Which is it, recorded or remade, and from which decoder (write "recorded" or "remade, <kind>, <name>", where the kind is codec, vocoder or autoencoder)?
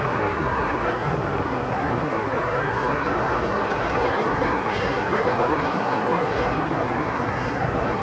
remade, codec, SNAC